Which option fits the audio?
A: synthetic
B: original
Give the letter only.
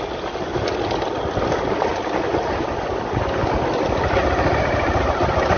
B